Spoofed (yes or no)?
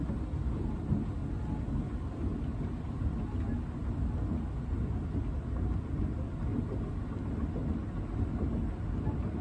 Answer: no